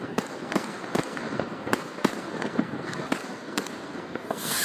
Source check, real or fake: fake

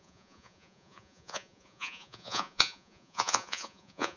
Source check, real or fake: fake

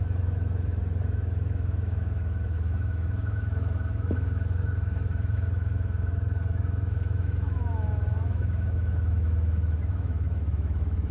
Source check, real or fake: fake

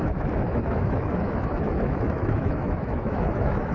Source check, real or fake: fake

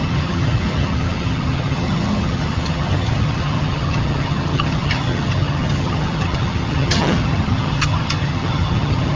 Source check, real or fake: fake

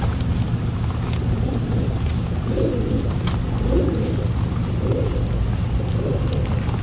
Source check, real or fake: real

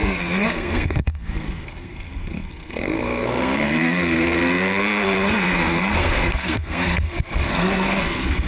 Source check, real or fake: fake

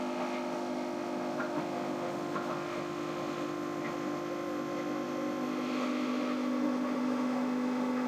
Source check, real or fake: fake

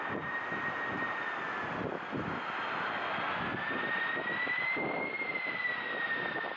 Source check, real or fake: real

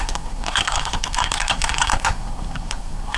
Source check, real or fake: fake